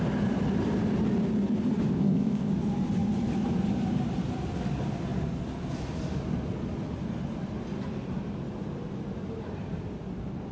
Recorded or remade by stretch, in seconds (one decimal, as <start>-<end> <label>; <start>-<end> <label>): 0.0-1.9 recorded; 1.9-2.5 remade; 2.5-10.5 recorded